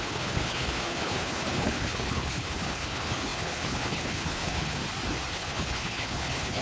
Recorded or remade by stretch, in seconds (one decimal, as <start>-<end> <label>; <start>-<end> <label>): 0.0-4.8 remade; 4.8-5.3 recorded; 5.3-6.6 remade

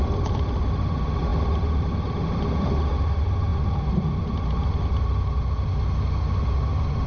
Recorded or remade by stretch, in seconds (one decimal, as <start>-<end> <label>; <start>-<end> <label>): 0.0-7.1 recorded

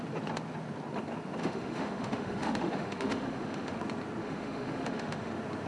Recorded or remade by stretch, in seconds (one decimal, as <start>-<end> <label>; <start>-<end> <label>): 0.0-1.4 recorded; 1.4-3.8 remade; 3.8-4.2 recorded; 4.2-5.3 remade; 5.3-5.7 recorded

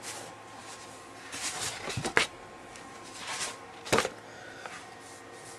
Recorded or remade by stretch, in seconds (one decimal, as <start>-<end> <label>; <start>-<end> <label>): 0.0-0.6 recorded; 0.6-3.8 remade; 3.8-5.6 recorded

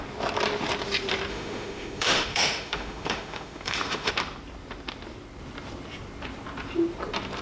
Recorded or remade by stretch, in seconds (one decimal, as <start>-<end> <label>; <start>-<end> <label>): 0.0-1.3 recorded; 1.3-4.1 remade; 4.1-7.4 recorded

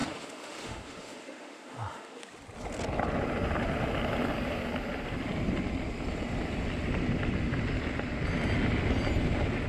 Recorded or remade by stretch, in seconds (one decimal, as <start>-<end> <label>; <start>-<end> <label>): 0.0-2.2 remade; 2.2-9.7 recorded

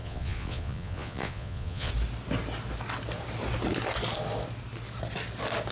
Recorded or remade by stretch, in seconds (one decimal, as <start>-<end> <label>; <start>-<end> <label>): 0.0-1.9 remade; 1.9-5.7 recorded